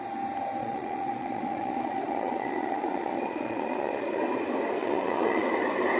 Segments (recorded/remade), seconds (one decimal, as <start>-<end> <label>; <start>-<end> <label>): 0.0-0.6 recorded; 0.6-4.2 remade; 4.2-4.8 recorded; 4.8-5.5 remade; 5.5-6.0 recorded